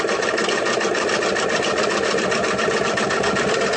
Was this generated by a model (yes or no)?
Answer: no